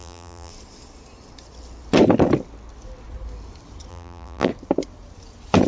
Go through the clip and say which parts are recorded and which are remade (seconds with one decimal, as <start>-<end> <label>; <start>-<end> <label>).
0.0-0.5 remade; 0.5-3.9 recorded; 3.9-4.5 remade; 4.5-5.7 recorded